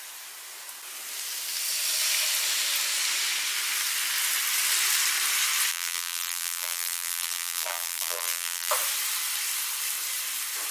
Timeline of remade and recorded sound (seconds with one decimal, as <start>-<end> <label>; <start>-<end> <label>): 0.0-5.7 recorded; 5.7-8.7 remade; 8.7-10.7 recorded